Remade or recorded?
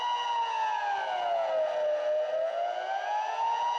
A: recorded